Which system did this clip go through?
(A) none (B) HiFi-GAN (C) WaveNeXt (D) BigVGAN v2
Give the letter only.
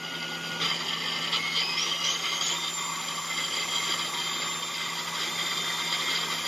A